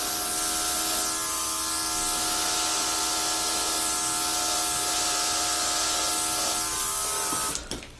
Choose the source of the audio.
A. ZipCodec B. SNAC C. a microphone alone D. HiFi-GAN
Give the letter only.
C